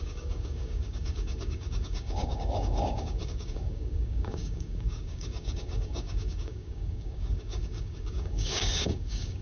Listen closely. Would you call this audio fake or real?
fake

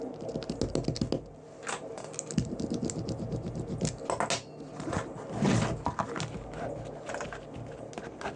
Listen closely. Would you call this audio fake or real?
real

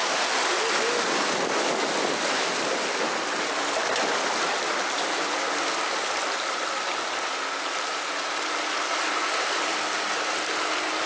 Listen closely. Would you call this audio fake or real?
real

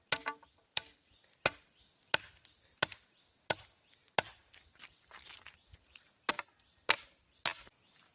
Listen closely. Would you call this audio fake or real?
real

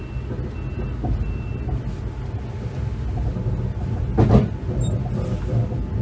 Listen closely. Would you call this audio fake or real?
real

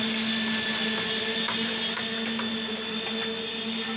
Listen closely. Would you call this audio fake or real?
real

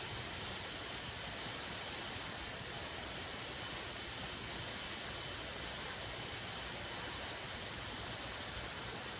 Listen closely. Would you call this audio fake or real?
real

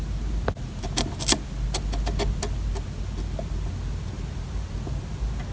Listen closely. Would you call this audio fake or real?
real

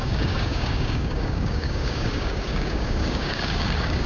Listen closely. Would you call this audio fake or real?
fake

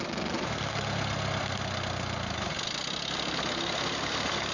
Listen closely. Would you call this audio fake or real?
real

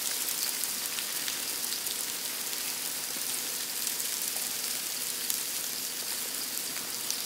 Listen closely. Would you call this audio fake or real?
real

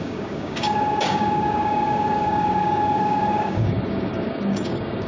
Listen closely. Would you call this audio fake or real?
fake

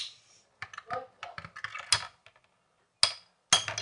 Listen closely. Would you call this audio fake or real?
real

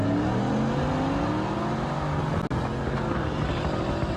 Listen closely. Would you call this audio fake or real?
real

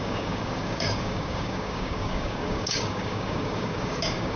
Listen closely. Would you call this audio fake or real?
fake